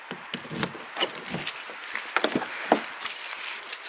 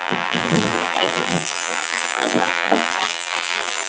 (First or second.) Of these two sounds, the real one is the first